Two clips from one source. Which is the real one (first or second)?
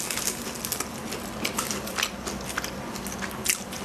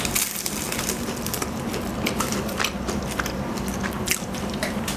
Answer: first